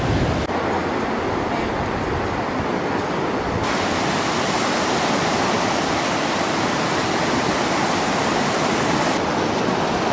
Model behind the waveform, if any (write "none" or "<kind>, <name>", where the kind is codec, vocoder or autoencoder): none